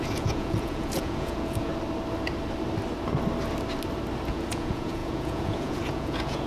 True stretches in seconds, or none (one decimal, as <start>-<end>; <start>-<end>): 1.7-4.3